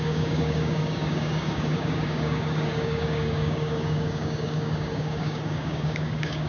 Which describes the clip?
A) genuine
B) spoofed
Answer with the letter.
B